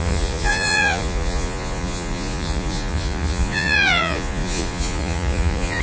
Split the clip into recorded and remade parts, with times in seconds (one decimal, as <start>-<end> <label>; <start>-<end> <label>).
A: 0.0-5.8 remade